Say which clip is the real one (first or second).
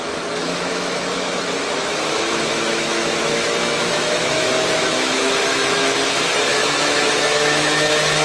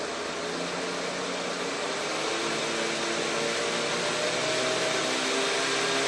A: second